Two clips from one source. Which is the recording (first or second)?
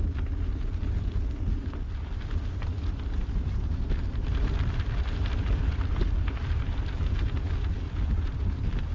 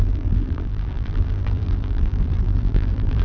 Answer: first